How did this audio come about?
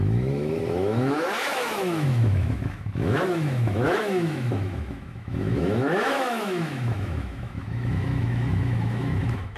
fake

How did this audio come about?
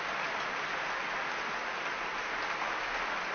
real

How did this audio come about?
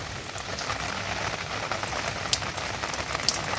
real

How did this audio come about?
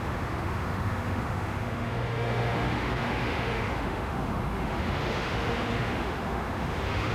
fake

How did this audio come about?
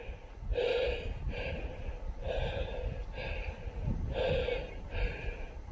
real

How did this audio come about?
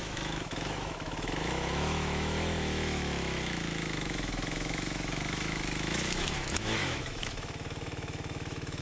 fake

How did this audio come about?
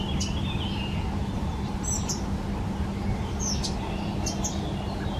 real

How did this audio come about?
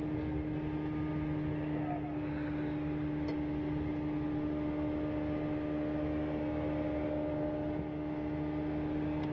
real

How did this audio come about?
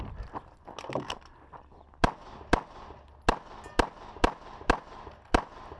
real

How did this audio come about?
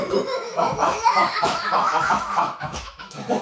fake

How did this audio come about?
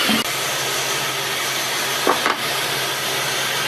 real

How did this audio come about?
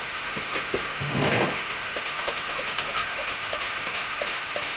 fake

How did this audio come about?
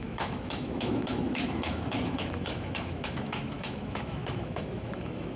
fake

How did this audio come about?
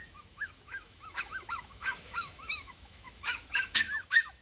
fake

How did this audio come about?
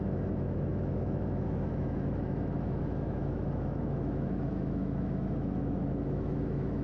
fake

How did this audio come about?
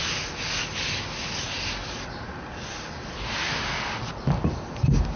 real